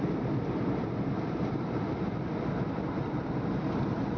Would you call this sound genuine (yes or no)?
no